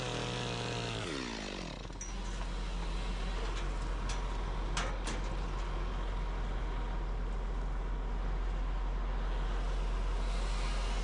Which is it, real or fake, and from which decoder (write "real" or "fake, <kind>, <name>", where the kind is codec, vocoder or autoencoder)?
real